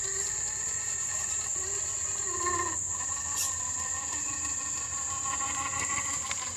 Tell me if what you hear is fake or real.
fake